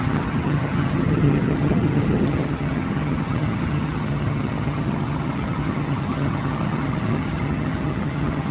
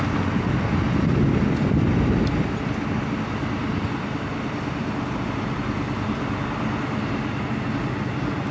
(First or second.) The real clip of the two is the second